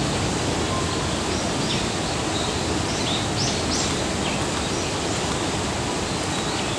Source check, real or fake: real